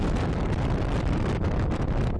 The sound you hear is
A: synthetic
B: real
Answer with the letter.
B